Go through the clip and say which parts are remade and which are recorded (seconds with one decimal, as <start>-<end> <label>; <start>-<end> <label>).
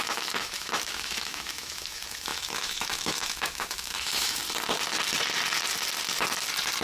0.0-4.4 remade; 4.4-6.8 recorded